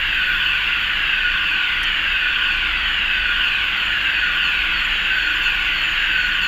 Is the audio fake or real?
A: real